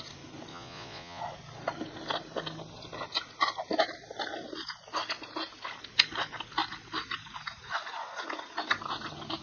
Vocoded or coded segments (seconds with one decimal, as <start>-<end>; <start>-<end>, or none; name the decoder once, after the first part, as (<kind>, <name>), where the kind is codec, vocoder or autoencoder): 0.5-1.2 (vocoder, Vocos)